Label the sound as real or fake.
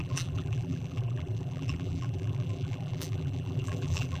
fake